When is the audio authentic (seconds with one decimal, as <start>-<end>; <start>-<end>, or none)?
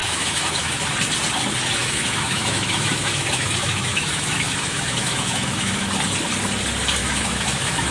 0.7-1.8; 5.9-7.0